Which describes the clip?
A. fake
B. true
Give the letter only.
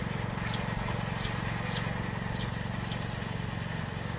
B